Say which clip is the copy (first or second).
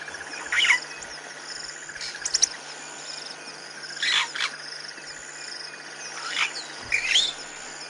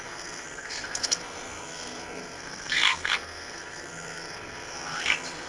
second